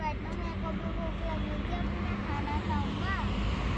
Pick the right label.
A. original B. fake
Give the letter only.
A